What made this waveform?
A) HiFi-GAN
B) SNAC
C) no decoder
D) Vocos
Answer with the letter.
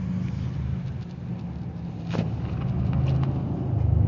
C